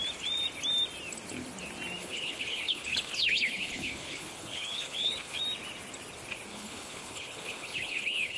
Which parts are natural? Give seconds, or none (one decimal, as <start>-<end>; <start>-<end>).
0.0-2.0; 5.4-6.5